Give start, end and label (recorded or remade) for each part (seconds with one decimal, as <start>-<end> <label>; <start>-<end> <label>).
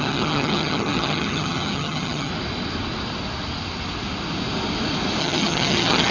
0.0-2.3 remade; 2.3-5.2 recorded; 5.2-6.1 remade